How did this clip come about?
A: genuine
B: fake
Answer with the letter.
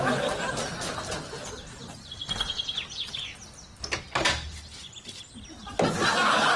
A